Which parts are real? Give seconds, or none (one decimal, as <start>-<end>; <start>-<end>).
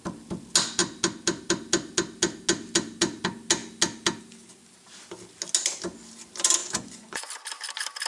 0.0-6.6; 7.3-8.1